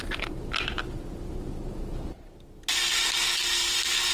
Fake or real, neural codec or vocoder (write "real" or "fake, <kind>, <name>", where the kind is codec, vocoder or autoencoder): real